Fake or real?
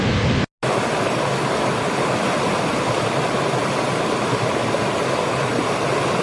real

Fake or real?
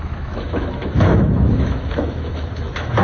fake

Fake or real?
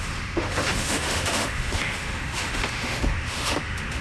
fake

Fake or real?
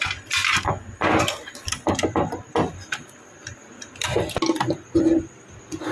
real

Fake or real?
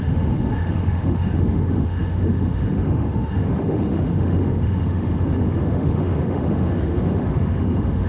fake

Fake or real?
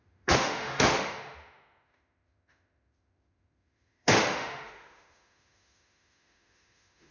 fake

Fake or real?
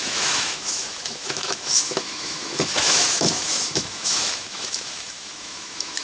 fake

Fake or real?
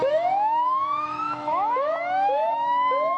fake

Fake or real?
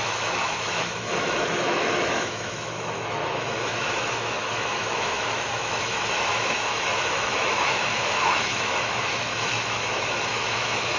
fake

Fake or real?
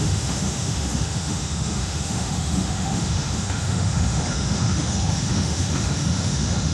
fake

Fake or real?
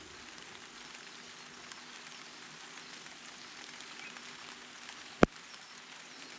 real